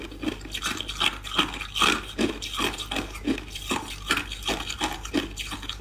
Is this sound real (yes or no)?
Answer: yes